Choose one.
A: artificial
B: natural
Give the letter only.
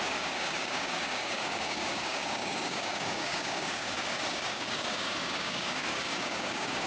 A